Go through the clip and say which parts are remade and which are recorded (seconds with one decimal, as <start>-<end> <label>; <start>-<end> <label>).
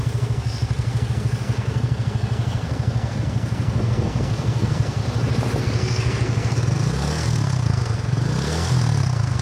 0.0-5.0 remade; 5.0-5.6 recorded; 5.6-9.4 remade